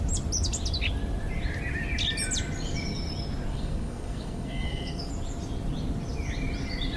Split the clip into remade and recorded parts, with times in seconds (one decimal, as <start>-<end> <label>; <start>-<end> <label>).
0.0-3.5 recorded; 3.5-5.1 remade; 5.1-7.0 recorded

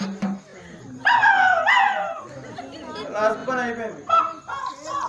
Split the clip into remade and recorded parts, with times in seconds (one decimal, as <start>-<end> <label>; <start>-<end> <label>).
0.0-5.1 recorded

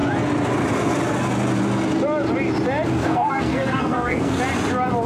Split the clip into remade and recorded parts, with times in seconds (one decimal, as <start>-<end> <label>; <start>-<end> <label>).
0.0-3.0 recorded; 3.0-4.4 remade; 4.4-5.1 recorded

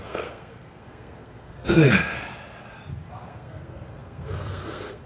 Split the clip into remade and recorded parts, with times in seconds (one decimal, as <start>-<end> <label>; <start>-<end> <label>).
0.0-2.0 remade; 2.0-3.1 recorded; 3.1-5.1 remade

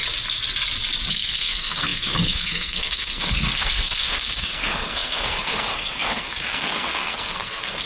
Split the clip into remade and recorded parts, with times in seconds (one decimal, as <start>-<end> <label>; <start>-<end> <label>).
0.0-1.1 recorded; 1.1-7.9 remade

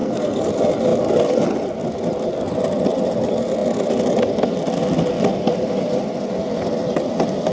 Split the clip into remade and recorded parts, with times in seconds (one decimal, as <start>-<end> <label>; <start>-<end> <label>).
0.0-0.5 remade; 0.5-7.5 recorded

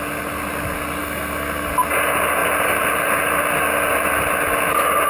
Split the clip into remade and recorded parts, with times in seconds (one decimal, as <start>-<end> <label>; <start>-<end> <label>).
0.0-1.0 recorded; 1.0-1.7 remade; 1.7-5.1 recorded

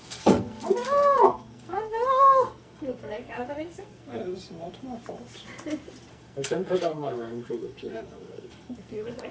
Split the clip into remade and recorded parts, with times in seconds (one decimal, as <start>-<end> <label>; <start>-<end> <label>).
0.0-4.2 remade; 4.2-6.1 recorded; 6.1-9.3 remade